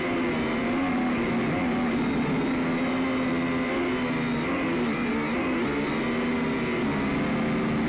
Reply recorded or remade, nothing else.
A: recorded